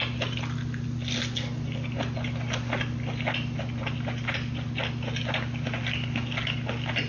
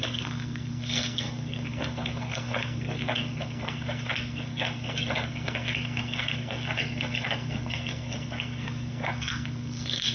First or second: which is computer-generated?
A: second